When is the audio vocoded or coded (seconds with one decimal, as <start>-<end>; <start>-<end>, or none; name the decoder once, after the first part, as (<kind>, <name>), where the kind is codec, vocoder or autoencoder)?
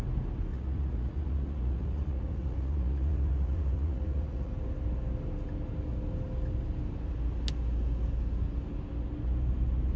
0.5-4.5 (vocoder, Vocos)